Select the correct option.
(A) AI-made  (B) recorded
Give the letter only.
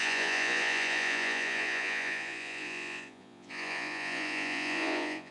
A